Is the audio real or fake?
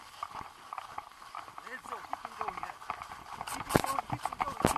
real